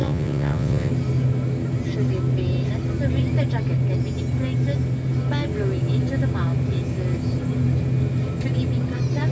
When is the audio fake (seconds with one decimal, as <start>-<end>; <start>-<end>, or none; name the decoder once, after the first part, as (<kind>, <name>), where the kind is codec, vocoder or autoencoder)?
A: 0.0-0.9 (vocoder, WaveNeXt)